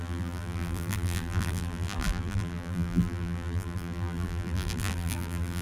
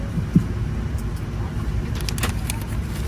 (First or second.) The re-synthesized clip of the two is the first